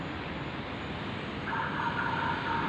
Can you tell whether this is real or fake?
real